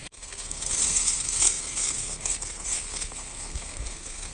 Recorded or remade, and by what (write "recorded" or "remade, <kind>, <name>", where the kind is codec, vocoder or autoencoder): remade, codec, SNAC